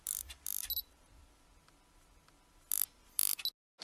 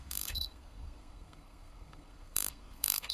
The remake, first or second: second